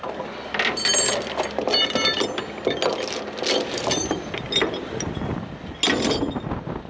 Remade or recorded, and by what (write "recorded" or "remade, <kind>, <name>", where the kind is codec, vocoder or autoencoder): recorded